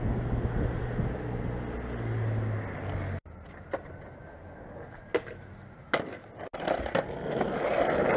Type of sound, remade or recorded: recorded